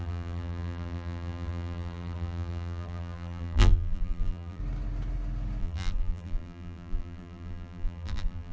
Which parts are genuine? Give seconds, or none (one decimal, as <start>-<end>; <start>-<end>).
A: 4.6-5.6